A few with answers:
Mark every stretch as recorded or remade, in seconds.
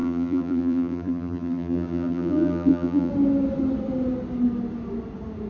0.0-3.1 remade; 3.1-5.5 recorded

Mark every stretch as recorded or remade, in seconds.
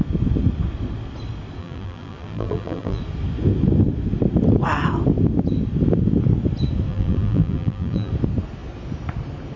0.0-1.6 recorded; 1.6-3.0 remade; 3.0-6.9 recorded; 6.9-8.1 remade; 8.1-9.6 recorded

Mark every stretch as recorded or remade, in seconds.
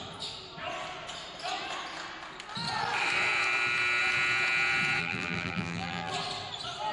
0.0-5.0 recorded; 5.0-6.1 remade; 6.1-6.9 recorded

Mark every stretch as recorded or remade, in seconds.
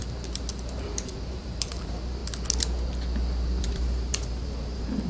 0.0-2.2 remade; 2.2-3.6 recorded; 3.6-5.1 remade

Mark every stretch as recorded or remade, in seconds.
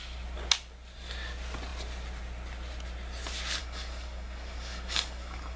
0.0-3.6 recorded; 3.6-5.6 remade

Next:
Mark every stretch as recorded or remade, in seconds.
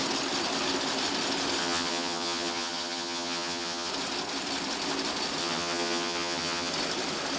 0.0-1.6 recorded; 1.6-3.9 remade; 3.9-5.4 recorded; 5.4-6.7 remade; 6.7-7.4 recorded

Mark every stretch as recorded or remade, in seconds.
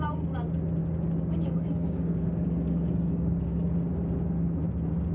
0.0-0.8 recorded; 0.8-3.9 remade; 3.9-5.1 recorded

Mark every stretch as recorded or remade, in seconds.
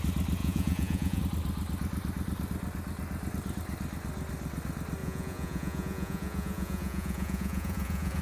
0.0-0.4 recorded; 0.4-1.2 remade; 1.2-5.0 recorded; 5.0-8.2 remade